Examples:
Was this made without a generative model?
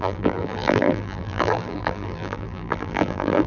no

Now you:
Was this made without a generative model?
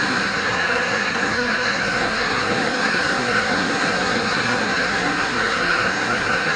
no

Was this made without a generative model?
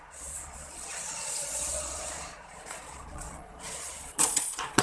no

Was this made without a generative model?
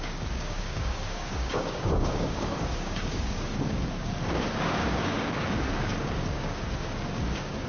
no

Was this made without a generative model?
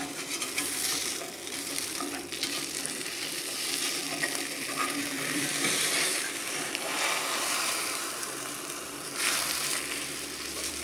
no